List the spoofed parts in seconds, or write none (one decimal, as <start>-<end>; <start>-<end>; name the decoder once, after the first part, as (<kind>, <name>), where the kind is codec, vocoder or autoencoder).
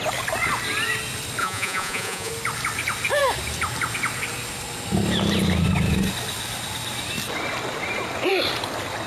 1.4-2.3 (vocoder, Vocos)